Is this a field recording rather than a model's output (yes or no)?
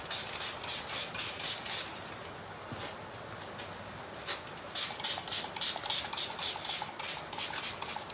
yes